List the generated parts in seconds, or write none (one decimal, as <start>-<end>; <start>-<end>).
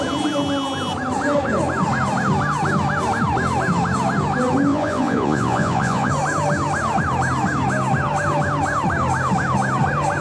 4.7-6.1